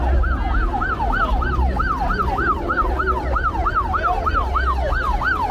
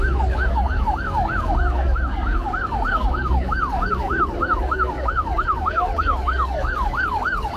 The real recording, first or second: first